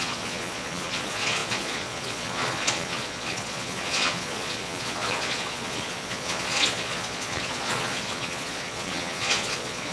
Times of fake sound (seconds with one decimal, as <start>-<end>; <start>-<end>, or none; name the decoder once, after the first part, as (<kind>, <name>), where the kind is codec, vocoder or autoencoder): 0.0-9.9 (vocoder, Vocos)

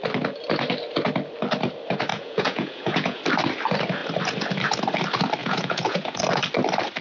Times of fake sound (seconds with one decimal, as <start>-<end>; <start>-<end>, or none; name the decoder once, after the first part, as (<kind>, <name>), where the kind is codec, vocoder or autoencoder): 2.1-3.2 (vocoder, Vocos); 5.4-6.2

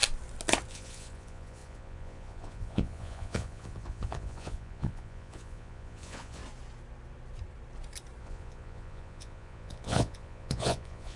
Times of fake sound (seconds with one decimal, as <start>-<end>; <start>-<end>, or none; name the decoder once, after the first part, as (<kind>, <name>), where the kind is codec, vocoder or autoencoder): 0.7-6.4 (vocoder, Vocos); 8.2-11.2